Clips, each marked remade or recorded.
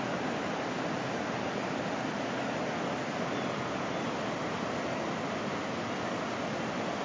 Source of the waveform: recorded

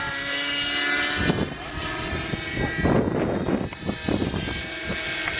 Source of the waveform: recorded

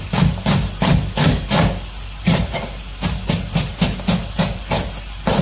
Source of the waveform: recorded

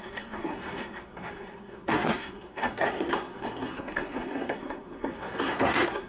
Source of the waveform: remade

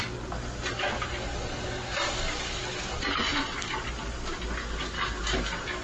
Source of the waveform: recorded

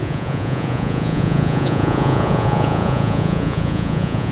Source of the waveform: remade